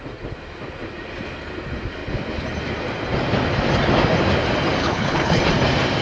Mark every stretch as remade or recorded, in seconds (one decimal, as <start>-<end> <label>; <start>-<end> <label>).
0.0-4.8 recorded; 4.8-5.4 remade; 5.4-6.0 recorded